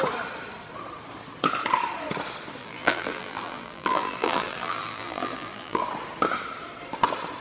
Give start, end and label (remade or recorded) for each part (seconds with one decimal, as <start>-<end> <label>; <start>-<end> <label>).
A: 0.0-2.6 recorded; 2.6-5.8 remade; 5.8-7.4 recorded